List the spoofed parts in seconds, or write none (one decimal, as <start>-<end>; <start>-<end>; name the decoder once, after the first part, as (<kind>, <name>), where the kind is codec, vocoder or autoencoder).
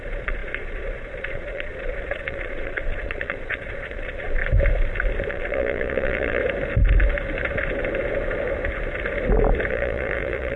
0.0-4.4 (vocoder, Vocos); 5.3-6.4; 9.7-10.6